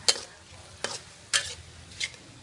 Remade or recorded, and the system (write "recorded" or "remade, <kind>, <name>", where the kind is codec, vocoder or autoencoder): recorded